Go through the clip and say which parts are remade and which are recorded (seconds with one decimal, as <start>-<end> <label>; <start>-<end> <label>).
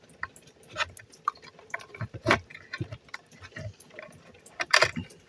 0.0-5.3 recorded